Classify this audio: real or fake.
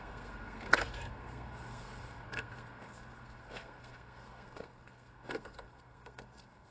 fake